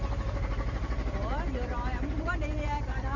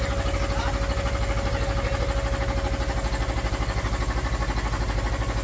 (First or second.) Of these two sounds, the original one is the second